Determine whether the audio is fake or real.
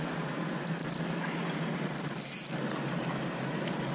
real